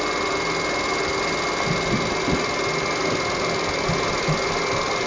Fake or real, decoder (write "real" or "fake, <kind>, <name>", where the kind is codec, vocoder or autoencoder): real